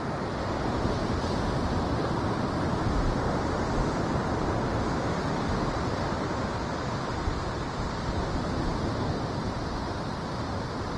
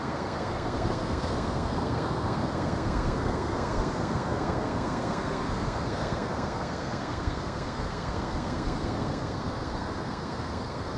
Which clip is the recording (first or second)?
first